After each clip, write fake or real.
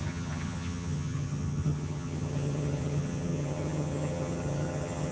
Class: fake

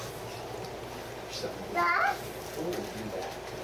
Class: real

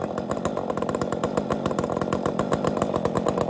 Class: real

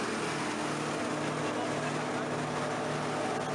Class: real